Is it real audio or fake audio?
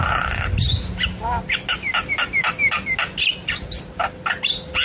real